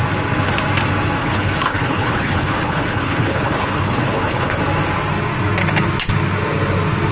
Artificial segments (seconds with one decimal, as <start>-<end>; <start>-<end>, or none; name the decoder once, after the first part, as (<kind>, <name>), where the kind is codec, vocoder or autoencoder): 1.2-4.6 (codec, HILCodec)